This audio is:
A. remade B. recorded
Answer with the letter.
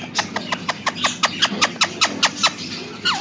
B